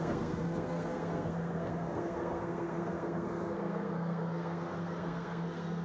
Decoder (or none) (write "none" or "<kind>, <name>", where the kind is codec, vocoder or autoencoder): codec, SNAC